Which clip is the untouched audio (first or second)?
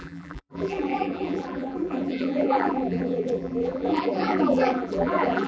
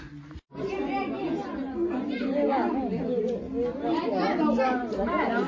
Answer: second